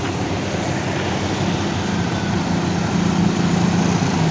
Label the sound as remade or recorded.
recorded